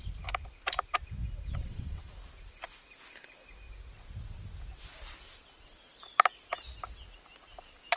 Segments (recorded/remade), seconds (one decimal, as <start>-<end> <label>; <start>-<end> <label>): 0.0-1.6 recorded; 1.6-2.1 remade; 2.1-8.0 recorded